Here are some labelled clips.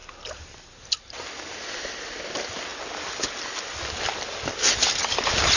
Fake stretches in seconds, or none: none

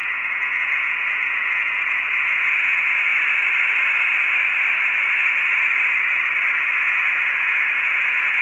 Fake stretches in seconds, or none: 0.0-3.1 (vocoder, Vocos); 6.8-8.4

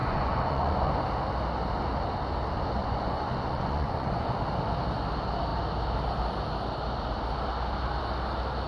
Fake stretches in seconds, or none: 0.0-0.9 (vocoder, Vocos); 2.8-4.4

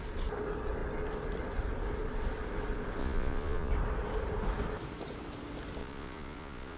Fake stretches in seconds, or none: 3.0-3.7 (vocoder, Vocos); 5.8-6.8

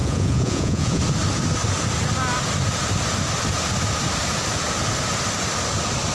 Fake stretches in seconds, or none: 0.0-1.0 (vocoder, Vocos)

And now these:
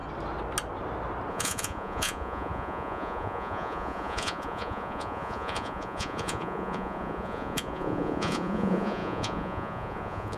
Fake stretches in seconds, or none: 1.3-10.4 (vocoder, Vocos)

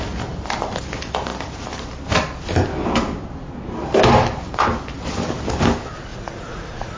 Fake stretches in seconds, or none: 6.1-7.0 (vocoder, Vocos)